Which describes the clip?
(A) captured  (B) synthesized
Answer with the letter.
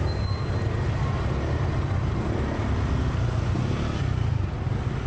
A